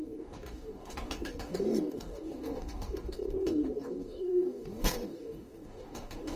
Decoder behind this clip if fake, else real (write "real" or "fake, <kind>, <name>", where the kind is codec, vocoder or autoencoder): fake, codec, DAC